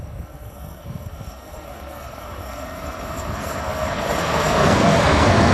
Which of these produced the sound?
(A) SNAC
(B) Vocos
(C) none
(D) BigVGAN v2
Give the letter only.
A